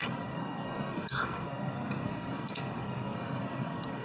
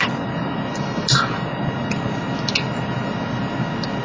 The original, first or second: second